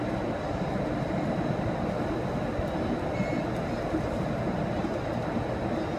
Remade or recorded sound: recorded